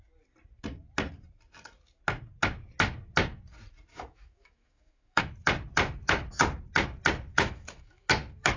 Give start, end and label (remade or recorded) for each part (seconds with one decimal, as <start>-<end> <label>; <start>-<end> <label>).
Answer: 0.0-3.9 recorded; 3.9-5.2 remade; 5.2-7.3 recorded; 7.3-8.1 remade; 8.1-8.6 recorded